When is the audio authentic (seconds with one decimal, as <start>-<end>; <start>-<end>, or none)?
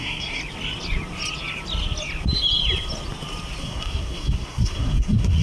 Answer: 0.4-3.6